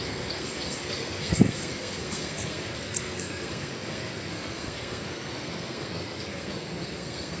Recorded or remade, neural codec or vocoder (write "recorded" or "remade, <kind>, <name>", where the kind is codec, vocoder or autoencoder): remade, codec, SNAC